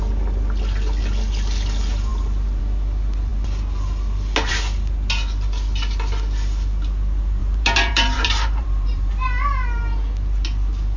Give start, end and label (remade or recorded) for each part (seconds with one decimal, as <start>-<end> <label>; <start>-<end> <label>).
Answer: 0.0-7.4 recorded; 7.4-9.1 remade; 9.1-11.0 recorded